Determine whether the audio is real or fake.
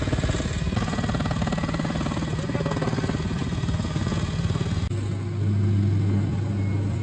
real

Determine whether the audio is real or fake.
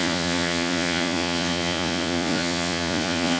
fake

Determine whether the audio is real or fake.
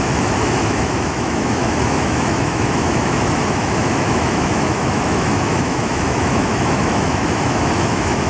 fake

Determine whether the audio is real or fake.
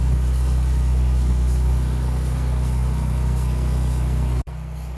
fake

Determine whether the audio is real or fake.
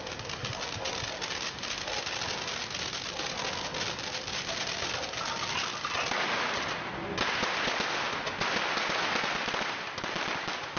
real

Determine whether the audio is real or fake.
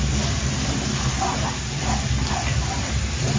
real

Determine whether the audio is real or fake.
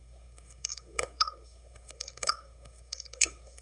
fake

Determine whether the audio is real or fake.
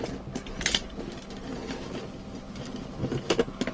real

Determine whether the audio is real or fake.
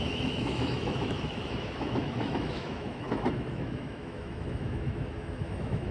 fake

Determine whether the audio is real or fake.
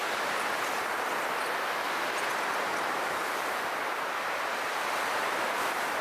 real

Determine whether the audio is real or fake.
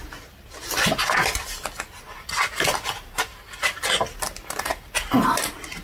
real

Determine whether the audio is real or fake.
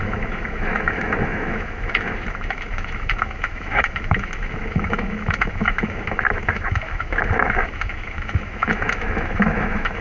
fake